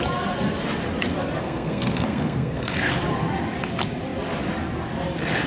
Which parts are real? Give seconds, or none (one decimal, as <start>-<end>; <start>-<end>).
0.0-1.4; 2.9-5.5